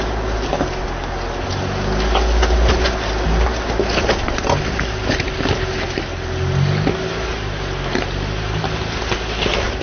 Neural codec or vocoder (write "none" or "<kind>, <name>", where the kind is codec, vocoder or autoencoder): none